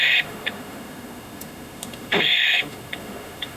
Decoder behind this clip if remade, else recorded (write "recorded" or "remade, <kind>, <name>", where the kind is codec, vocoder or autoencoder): remade, autoencoder, DAC-VAE